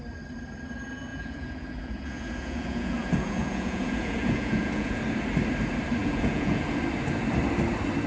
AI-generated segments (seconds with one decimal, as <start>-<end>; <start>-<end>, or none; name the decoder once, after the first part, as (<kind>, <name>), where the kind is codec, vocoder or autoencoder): 1.1-5.0 (vocoder, Vocos); 6.0-6.8